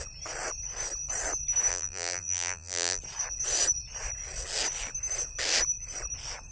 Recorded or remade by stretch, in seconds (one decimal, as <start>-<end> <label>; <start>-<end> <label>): 0.0-1.7 recorded; 1.7-3.0 remade; 3.0-6.5 recorded